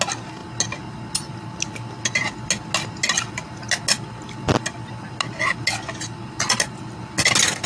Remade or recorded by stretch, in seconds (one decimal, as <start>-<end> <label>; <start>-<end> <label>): 0.0-7.7 recorded